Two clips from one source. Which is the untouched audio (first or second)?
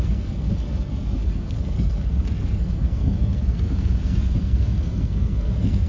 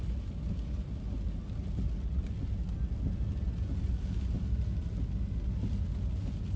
second